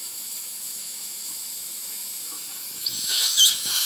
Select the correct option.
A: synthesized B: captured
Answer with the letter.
A